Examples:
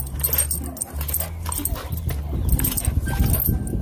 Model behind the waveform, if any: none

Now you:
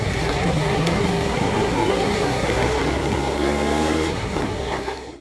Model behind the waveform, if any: codec, SNAC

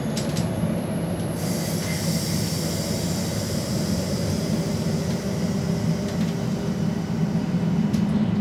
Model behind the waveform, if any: none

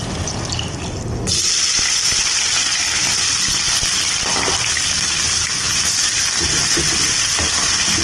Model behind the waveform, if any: none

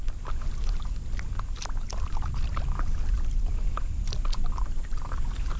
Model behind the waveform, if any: none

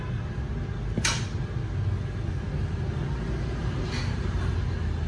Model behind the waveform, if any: none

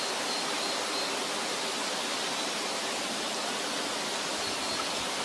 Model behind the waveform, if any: none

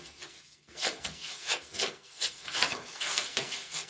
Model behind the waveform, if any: codec, SNAC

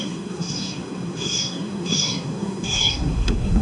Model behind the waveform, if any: codec, SNAC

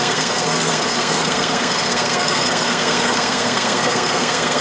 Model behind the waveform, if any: codec, SNAC